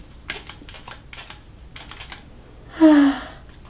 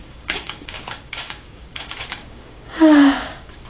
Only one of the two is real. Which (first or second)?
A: first